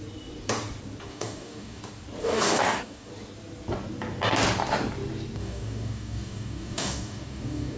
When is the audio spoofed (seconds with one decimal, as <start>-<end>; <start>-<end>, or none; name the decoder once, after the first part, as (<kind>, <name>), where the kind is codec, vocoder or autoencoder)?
1.1-1.8 (codec, DAC); 2.2-3.1; 5.4-7.8